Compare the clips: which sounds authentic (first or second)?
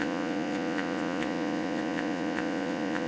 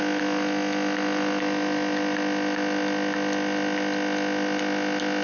second